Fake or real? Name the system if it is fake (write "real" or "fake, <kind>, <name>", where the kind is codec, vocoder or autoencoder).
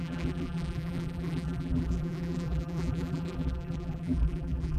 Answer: fake, vocoder, BigVGAN v2